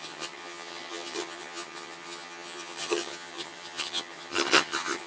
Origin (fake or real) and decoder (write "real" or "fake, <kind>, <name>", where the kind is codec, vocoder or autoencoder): fake, vocoder, HiFi-GAN